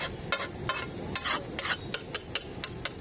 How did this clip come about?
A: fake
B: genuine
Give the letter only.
B